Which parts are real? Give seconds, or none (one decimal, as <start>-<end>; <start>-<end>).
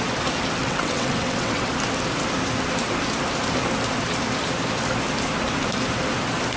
0.0-0.6; 1.7-6.6